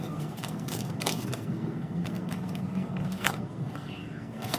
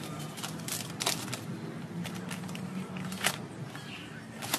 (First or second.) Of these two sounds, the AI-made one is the first